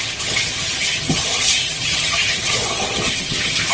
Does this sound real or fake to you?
fake